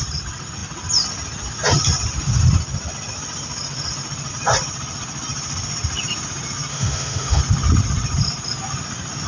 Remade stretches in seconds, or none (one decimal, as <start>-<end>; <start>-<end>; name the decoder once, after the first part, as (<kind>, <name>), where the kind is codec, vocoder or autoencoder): 6.7-7.4 (autoencoder, DAC-VAE)